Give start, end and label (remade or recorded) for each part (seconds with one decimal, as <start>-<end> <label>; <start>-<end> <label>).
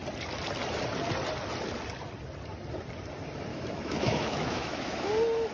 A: 0.0-3.5 recorded; 3.5-5.1 remade; 5.1-5.5 recorded